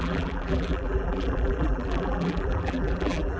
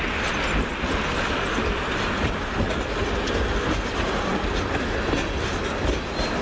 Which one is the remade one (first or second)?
first